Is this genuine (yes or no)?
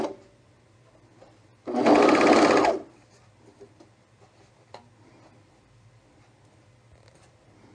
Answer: yes